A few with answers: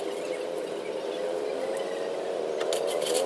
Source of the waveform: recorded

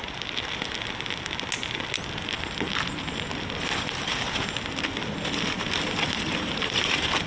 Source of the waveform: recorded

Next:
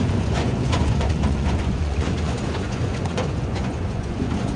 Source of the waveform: remade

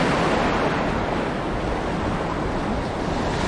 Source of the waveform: recorded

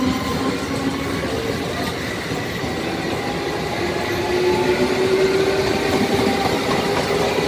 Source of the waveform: recorded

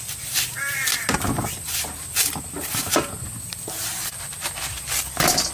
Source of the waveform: recorded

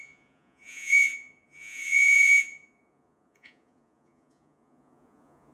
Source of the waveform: remade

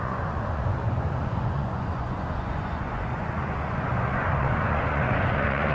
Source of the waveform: remade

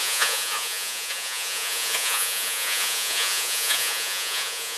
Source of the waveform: remade